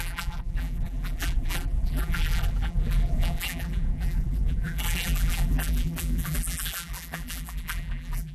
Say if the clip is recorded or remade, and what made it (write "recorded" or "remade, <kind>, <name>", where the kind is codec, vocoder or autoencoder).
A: remade, vocoder, BigVGAN v2